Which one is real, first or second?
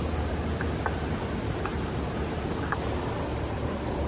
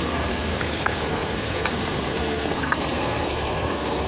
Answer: first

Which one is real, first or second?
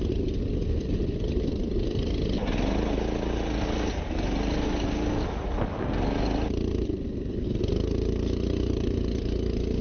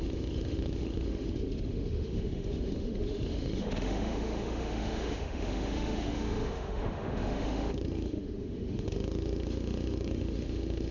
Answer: first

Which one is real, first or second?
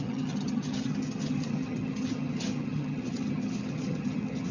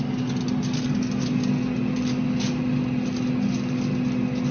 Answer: second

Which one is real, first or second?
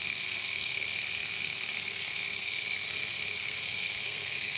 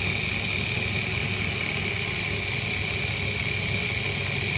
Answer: second